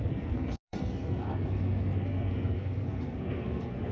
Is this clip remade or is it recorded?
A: remade